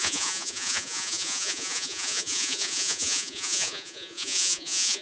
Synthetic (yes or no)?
yes